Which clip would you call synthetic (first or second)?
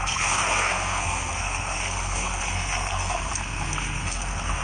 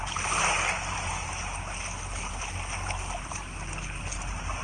first